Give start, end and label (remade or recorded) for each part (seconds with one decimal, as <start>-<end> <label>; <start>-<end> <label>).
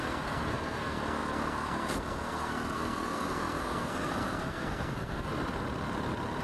0.0-5.3 remade; 5.3-6.4 recorded